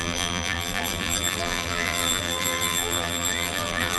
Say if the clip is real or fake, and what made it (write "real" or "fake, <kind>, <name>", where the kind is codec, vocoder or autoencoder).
fake, vocoder, BigVGAN v2